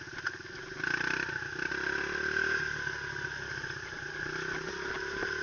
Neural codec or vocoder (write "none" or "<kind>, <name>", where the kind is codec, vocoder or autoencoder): none